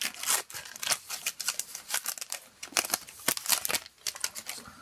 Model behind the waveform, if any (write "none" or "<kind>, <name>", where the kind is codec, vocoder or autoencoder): none